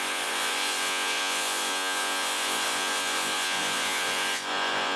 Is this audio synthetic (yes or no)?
yes